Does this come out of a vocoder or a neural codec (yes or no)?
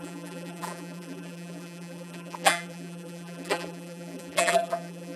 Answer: yes